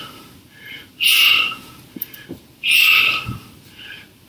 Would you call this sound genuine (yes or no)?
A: no